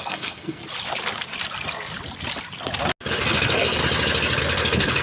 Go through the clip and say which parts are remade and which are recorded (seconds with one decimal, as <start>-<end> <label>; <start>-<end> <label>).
0.0-0.6 remade; 0.6-3.1 recorded; 3.1-3.8 remade; 3.8-4.4 recorded; 4.4-5.0 remade